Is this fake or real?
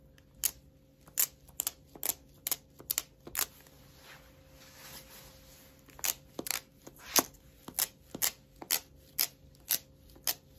real